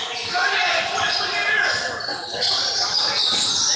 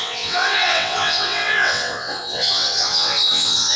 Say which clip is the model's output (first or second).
second